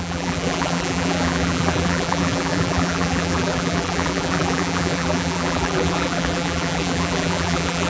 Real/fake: fake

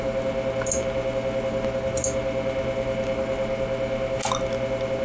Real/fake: real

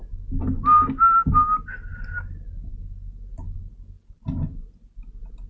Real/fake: real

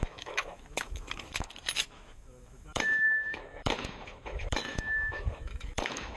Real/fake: fake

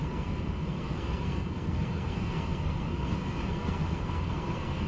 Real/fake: fake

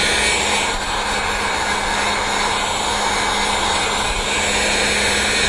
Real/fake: real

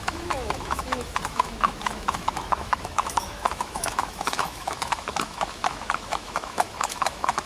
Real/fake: fake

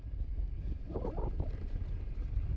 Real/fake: real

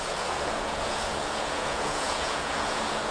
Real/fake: fake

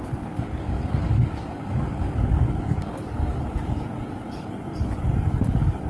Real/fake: fake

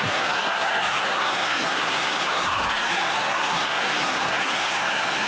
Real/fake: fake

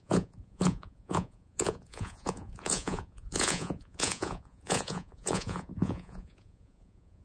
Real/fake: fake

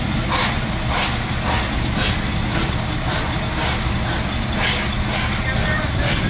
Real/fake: real